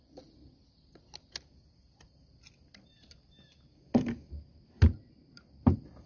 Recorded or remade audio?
recorded